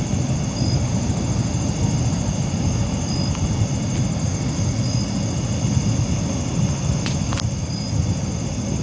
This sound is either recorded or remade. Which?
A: recorded